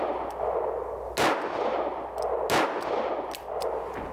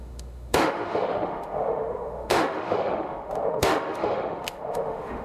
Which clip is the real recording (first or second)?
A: first